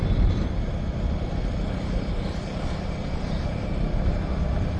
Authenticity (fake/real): real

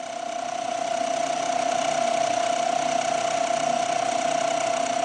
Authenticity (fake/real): real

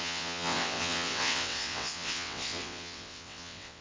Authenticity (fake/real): fake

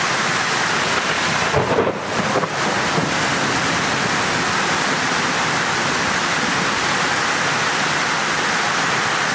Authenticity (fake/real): real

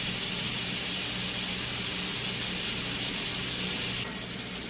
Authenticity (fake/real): real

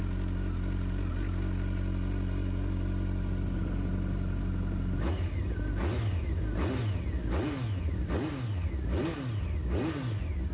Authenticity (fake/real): real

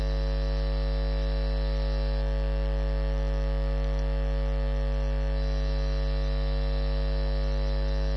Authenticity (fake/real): real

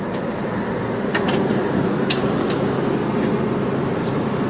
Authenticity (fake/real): real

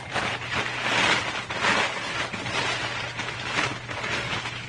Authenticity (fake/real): fake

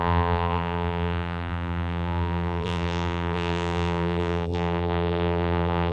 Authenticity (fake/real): fake